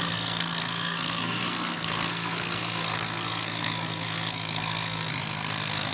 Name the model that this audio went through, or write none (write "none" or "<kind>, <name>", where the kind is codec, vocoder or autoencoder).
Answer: codec, SNAC